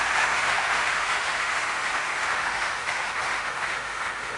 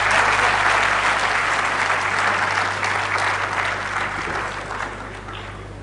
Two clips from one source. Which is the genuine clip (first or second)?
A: second